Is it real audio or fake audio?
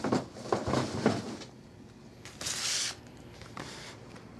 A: real